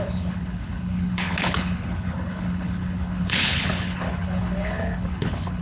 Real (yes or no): no